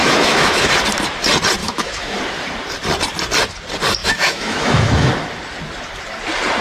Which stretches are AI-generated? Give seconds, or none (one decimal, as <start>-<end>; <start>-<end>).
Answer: 0.0-0.7; 1.6-2.2; 4.0-5.1